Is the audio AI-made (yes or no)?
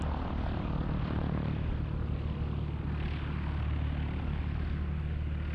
no